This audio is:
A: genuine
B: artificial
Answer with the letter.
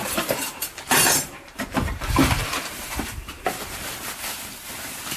B